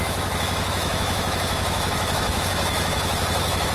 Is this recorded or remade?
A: remade